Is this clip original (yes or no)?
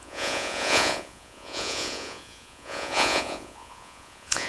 no